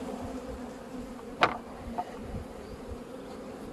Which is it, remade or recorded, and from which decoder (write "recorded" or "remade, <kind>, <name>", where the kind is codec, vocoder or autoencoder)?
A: recorded